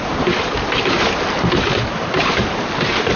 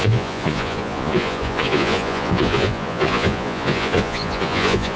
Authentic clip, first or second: first